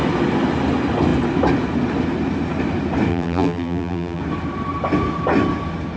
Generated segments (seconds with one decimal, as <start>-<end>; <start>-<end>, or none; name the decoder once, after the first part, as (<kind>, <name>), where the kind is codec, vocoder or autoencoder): 3.1-4.2 (vocoder, BigVGAN v2)